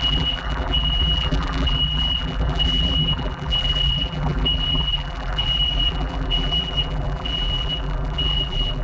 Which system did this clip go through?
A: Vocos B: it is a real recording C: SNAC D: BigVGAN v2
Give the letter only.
D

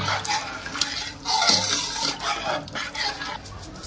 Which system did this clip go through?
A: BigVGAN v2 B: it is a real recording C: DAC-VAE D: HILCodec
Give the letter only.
B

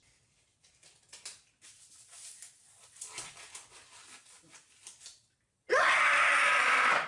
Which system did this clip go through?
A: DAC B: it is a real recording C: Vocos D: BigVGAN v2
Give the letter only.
D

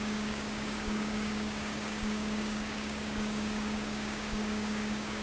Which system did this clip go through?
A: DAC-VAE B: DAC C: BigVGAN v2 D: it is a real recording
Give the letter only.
B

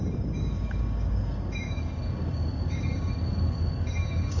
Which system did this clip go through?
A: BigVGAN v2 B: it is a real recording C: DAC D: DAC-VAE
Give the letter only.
C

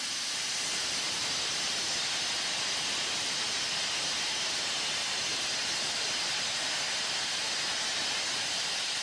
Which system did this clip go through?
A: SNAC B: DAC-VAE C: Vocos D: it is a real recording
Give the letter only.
D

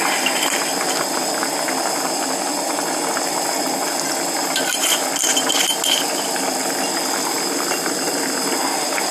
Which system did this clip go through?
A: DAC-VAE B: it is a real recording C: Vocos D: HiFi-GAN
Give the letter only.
B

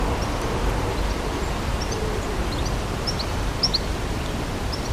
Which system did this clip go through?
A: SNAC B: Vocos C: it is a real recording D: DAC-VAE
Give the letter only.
C